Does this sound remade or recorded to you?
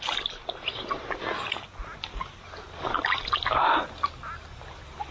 recorded